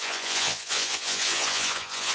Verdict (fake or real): fake